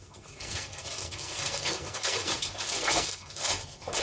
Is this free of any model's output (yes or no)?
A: no